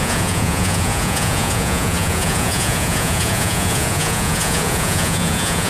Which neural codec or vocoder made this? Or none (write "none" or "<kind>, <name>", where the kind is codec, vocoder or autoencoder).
vocoder, Vocos